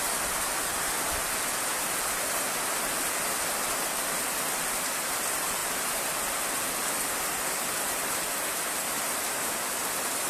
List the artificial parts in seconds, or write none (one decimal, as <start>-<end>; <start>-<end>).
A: none